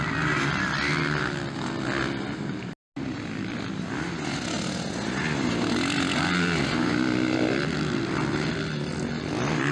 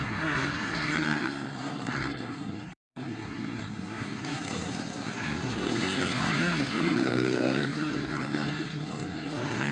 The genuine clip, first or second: first